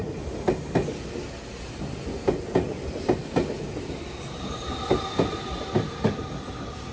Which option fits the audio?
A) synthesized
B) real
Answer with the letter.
B